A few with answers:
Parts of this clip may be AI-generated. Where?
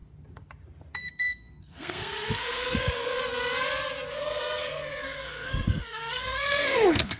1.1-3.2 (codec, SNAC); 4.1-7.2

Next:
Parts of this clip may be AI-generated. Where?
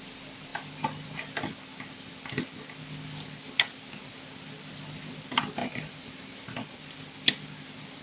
5.6-6.4 (vocoder, BigVGAN v2)